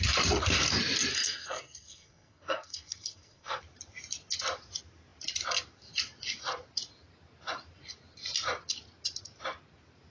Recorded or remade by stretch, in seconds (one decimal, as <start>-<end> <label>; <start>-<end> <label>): 0.0-1.1 recorded; 1.1-3.6 remade; 3.6-10.1 recorded